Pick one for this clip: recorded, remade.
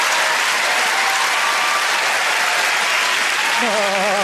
recorded